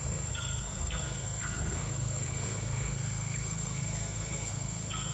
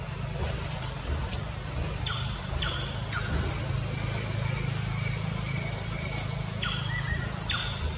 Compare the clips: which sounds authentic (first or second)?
second